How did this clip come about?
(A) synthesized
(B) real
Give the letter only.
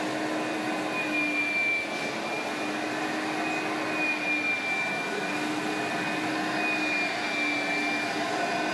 B